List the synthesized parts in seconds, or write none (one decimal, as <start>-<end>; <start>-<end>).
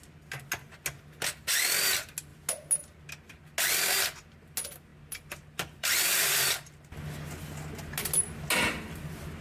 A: 4.9-6.9